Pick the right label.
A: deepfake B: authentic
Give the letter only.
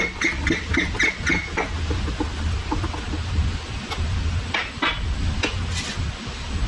B